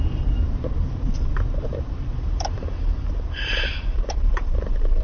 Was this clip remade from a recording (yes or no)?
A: yes